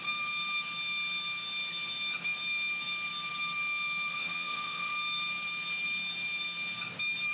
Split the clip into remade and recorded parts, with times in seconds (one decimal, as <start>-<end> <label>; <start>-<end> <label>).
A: 0.0-4.1 recorded; 4.1-4.9 remade; 4.9-7.3 recorded